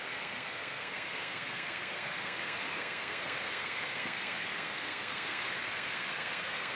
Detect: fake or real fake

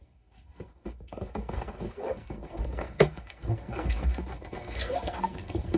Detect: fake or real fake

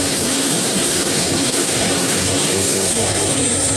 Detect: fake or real fake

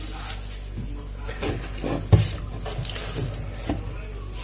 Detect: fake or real real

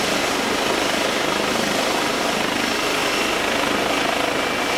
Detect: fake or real real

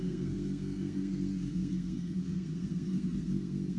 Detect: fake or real fake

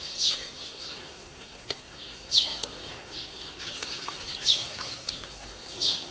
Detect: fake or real fake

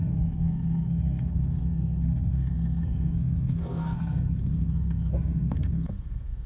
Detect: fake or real fake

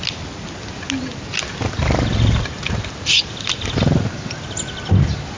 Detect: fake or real real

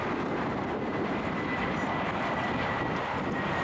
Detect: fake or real real